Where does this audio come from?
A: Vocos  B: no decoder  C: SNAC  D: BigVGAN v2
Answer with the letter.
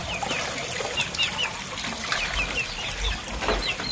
B